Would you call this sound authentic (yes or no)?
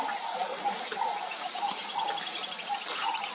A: yes